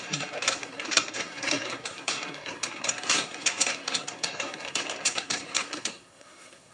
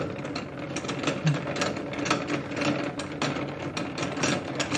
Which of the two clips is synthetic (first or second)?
first